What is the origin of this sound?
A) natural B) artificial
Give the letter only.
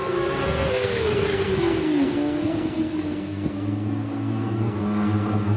B